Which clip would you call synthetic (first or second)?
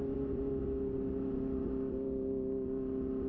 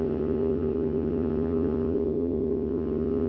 second